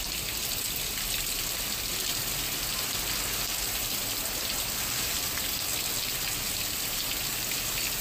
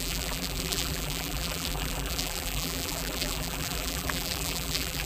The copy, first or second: second